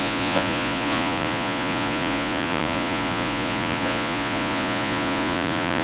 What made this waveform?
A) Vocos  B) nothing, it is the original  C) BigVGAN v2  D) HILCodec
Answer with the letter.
A